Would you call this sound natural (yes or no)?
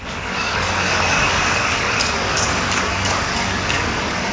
no